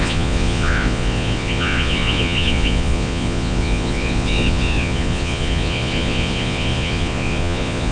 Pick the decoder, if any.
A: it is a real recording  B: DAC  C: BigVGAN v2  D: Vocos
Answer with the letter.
D